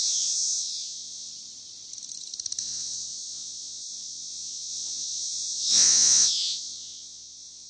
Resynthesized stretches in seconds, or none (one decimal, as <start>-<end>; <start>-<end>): 0.0-1.3; 2.6-7.7